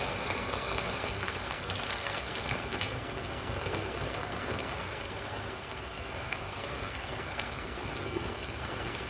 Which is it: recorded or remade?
remade